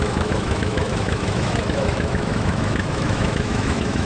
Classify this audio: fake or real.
fake